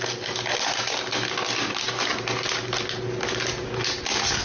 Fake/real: real